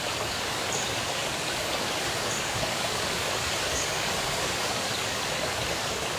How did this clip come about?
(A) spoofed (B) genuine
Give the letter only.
A